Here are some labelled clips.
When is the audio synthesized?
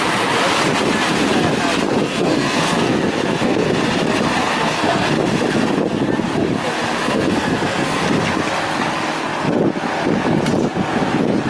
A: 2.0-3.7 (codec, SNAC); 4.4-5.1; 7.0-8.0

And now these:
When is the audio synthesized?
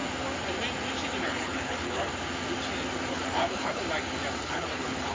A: 1.2-2.1 (codec, HILCodec); 3.1-3.8; 4.4-5.1